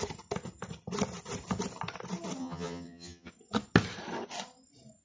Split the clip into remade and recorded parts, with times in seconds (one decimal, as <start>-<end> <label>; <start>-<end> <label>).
0.0-2.4 recorded; 2.4-3.3 remade; 3.3-5.0 recorded

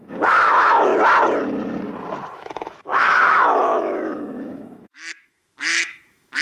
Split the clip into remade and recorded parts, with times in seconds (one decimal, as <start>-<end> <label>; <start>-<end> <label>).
0.0-0.9 remade; 0.9-2.3 recorded; 2.3-6.4 remade

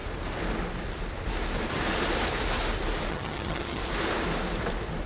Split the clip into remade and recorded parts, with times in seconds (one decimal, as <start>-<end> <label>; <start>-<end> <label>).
0.0-3.1 recorded; 3.1-3.8 remade; 3.8-5.1 recorded

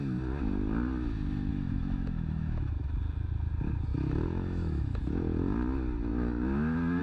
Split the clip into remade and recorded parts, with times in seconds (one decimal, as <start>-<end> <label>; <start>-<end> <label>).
0.0-1.5 recorded; 1.5-2.9 remade; 2.9-3.9 recorded; 3.9-5.0 remade; 5.0-6.1 recorded; 6.1-7.0 remade

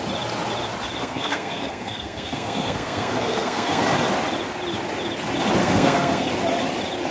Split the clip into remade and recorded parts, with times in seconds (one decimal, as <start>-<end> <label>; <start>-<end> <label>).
0.0-1.0 recorded; 1.0-3.8 remade; 3.8-5.6 recorded; 5.6-6.3 remade; 6.3-7.1 recorded

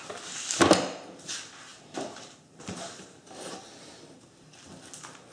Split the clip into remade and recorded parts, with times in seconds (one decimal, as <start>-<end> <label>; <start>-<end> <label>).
0.0-1.7 recorded; 1.7-3.6 remade; 3.6-5.3 recorded

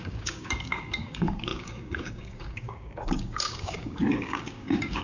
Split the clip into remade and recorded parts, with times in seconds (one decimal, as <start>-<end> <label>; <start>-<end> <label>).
0.0-5.0 remade

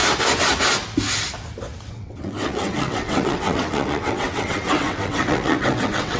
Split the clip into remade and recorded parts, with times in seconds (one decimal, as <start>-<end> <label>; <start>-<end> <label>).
0.0-1.9 recorded; 1.9-6.2 remade